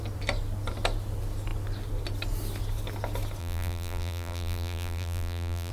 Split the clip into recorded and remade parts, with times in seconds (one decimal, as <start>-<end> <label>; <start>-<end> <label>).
0.0-3.4 recorded; 3.4-5.7 remade